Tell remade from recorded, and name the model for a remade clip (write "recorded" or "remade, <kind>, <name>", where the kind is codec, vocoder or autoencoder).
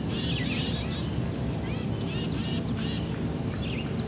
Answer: recorded